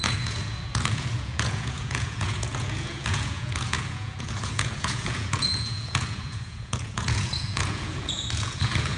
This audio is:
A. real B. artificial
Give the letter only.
B